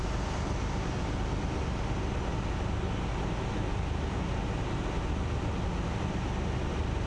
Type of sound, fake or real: real